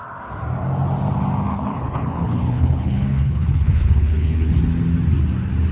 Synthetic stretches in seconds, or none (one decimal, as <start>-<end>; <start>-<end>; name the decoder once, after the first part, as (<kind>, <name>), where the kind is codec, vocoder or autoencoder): 1.5-4.5 (codec, HILCodec)